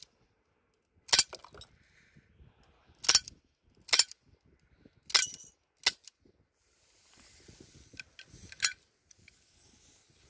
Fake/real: real